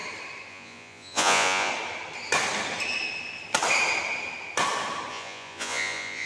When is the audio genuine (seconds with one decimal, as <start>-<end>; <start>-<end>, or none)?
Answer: 0.0-0.5; 1.7-5.1